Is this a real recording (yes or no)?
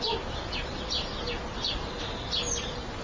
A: yes